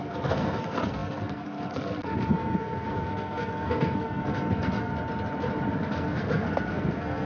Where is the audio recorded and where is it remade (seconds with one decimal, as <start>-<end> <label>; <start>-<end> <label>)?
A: 0.0-4.9 remade; 4.9-5.7 recorded; 5.7-7.3 remade